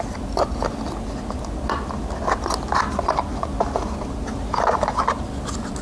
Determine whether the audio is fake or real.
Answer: real